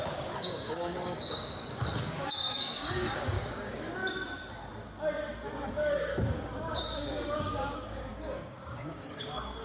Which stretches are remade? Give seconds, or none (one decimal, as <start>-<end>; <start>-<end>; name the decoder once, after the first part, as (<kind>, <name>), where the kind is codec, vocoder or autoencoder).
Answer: 0.0-4.0 (codec, DAC); 5.7-9.6